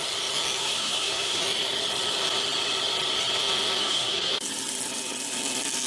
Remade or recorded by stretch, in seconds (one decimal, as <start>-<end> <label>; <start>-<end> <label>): 0.0-0.6 recorded; 0.6-1.4 remade; 1.4-3.8 recorded; 3.8-4.3 remade; 4.3-5.9 recorded